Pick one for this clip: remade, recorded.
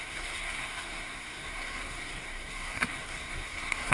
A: remade